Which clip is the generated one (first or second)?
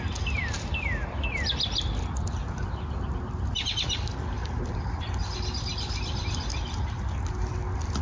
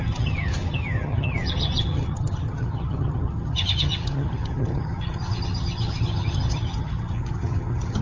second